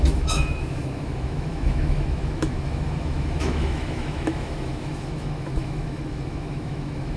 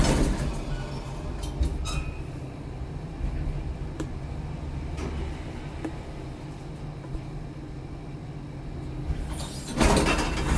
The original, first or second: second